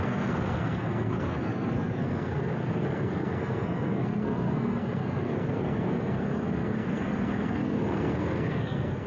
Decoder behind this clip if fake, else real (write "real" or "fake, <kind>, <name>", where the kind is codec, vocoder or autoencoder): fake, codec, SNAC